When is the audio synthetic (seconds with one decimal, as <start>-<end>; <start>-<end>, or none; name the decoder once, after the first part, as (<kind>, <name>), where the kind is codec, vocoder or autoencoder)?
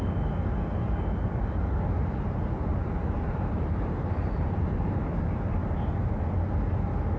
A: 2.7-6.2 (vocoder, BigVGAN v2)